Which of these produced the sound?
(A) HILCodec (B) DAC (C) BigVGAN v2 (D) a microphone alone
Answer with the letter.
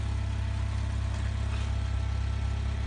D